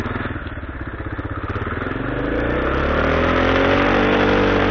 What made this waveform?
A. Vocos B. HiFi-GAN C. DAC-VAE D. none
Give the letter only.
D